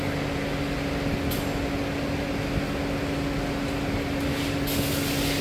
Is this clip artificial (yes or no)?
no